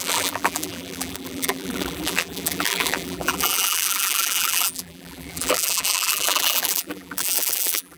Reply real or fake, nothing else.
fake